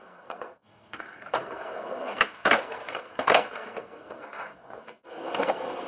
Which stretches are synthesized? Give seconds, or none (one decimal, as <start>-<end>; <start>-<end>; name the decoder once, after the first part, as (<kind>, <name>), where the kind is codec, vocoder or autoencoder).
0.0-5.9 (codec, SNAC)

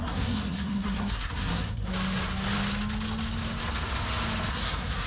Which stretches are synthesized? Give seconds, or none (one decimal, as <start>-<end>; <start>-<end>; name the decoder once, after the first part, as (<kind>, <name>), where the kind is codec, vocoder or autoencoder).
0.0-1.9 (codec, SNAC); 4.5-5.1